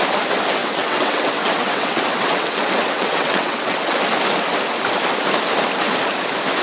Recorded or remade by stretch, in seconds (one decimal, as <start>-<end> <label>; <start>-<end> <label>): 0.0-0.6 recorded; 0.6-4.0 remade; 4.0-6.6 recorded